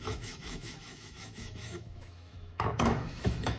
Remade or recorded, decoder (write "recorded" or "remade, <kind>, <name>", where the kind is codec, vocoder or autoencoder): remade, autoencoder, DAC-VAE